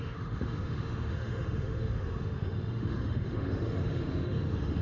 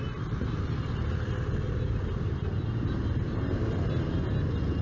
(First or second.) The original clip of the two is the second